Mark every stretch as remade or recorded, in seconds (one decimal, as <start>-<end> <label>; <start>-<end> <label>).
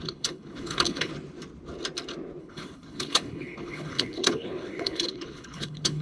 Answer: 0.0-1.1 remade; 1.1-2.4 recorded; 2.4-6.0 remade